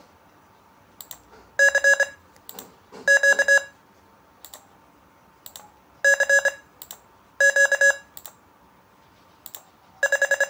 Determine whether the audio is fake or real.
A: real